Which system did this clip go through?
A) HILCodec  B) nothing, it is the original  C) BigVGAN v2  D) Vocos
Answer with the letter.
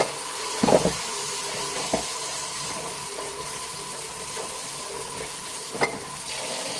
B